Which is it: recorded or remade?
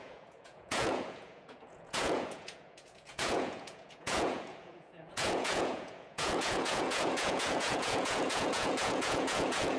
remade